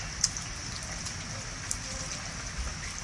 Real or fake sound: real